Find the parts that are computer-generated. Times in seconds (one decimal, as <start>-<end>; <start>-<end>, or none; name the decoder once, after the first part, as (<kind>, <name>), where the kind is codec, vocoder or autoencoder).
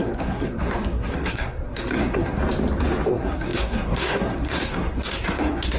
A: 0.0-2.4 (codec, SNAC); 3.1-5.8